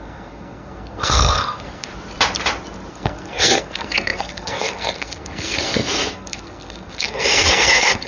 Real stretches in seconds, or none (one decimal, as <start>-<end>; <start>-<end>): 1.9-2.9